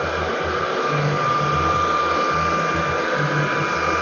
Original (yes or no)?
yes